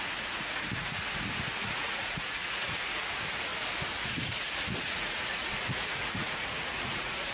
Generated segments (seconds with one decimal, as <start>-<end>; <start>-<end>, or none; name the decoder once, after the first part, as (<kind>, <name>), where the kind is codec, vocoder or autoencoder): 0.0-1.0 (vocoder, Vocos); 1.6-3.5; 4.8-7.3